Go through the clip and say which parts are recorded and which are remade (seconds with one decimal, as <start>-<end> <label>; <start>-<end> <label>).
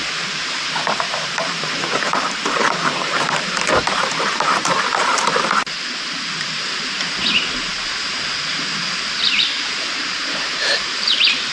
0.0-5.1 remade; 5.1-9.1 recorded; 9.1-11.5 remade